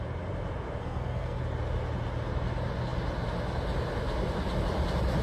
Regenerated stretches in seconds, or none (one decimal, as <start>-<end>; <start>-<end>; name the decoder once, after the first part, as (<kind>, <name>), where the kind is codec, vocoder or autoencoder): 0.8-1.4 (codec, SNAC)